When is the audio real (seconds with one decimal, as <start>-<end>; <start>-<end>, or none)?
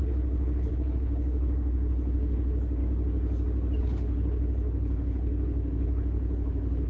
2.8-3.8